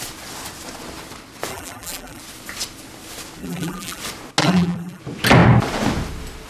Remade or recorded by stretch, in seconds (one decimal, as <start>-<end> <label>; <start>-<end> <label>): 0.0-1.5 recorded; 1.5-2.2 remade; 2.2-3.4 recorded; 3.4-4.0 remade; 4.0-4.4 recorded; 4.4-5.0 remade; 5.0-6.5 recorded